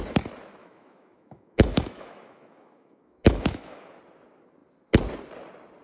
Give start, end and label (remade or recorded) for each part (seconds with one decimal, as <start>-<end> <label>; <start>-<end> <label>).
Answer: 0.0-0.6 recorded; 0.6-4.0 remade; 4.0-5.8 recorded